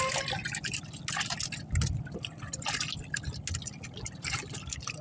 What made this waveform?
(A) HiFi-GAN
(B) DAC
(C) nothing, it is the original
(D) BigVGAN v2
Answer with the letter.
C